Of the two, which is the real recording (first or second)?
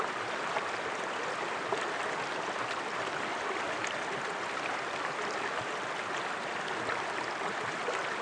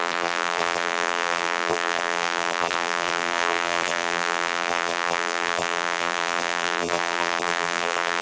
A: first